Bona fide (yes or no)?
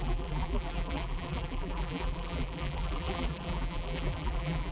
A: no